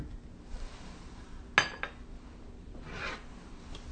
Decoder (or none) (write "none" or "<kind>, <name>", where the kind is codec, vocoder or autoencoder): none